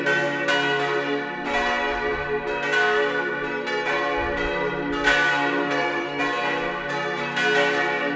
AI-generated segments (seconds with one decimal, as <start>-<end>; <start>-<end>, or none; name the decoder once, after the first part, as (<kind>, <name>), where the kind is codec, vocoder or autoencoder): 5.6-6.2 (codec, SNAC)